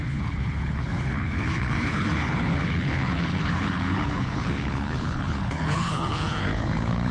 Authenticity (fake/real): fake